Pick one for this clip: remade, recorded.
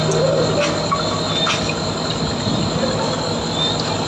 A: recorded